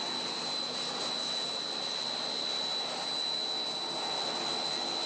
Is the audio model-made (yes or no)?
no